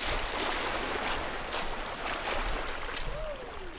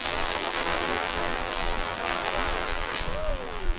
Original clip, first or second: first